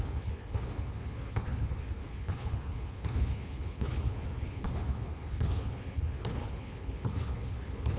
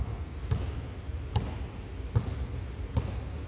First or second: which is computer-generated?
first